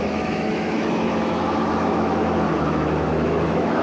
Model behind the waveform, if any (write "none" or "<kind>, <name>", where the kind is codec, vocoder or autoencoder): autoencoder, DAC-VAE